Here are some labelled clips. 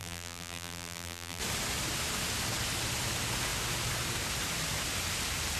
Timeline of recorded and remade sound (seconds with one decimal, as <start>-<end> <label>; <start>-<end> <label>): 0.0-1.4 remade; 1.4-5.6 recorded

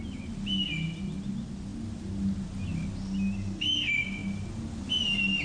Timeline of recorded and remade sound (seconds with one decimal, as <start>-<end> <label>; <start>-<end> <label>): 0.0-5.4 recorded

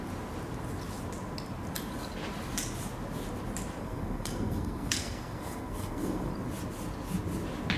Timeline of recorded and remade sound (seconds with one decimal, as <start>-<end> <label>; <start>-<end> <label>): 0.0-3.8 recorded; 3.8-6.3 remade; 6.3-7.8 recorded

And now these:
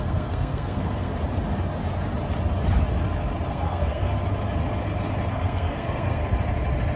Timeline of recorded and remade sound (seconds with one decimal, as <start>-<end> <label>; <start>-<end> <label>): 0.0-1.1 remade; 1.1-3.5 recorded; 3.5-4.1 remade; 4.1-5.3 recorded; 5.3-6.2 remade; 6.2-7.0 recorded

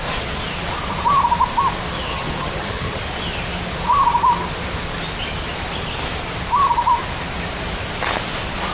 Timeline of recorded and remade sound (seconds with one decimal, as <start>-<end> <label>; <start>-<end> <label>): 0.0-2.1 recorded; 2.1-3.0 remade; 3.0-8.7 recorded